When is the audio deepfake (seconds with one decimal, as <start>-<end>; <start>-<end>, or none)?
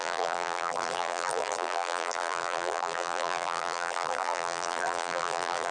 0.0-5.7